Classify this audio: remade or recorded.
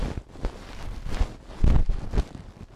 recorded